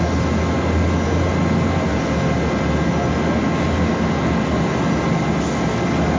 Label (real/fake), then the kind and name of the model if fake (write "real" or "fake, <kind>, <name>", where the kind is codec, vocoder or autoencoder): real